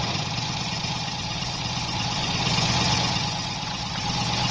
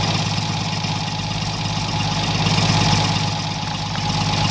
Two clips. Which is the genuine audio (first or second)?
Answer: second